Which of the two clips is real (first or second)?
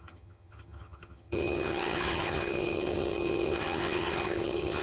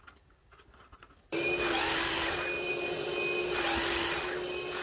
second